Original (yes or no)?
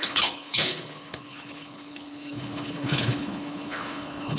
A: no